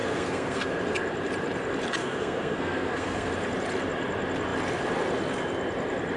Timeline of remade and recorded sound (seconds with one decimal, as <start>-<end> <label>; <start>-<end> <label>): 0.0-0.8 remade; 0.8-2.0 recorded; 2.0-3.3 remade; 3.3-6.2 recorded